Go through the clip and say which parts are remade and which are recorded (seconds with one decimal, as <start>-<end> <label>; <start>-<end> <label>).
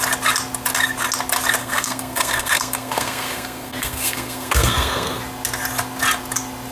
0.0-1.6 recorded; 1.6-5.2 remade; 5.2-6.7 recorded